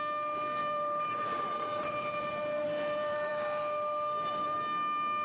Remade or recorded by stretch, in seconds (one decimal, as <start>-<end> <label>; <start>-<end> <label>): 0.0-0.6 recorded; 0.6-3.3 remade; 3.3-5.2 recorded